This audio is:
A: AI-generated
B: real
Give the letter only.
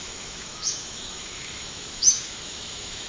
A